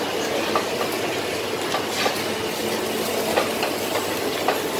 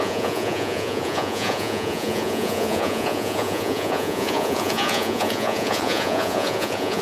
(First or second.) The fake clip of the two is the second